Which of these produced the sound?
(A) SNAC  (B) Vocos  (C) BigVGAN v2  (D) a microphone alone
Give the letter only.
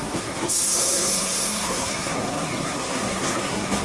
A